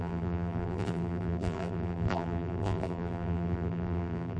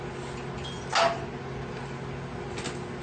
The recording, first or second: second